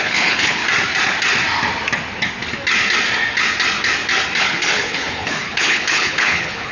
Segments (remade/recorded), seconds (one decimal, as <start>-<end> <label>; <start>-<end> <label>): 0.0-0.6 remade; 0.6-4.4 recorded; 4.4-6.7 remade